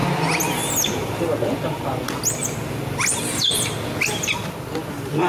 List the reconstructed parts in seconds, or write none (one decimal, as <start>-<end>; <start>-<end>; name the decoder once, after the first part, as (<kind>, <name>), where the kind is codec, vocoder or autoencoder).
none